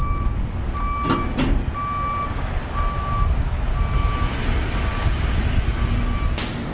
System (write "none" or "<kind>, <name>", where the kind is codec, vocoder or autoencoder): none